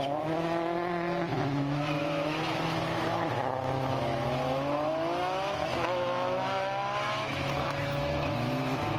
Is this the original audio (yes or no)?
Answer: no